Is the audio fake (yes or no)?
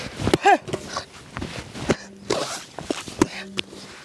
no